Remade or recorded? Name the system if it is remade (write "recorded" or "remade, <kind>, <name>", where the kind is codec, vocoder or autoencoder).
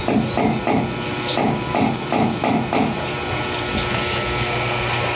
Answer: recorded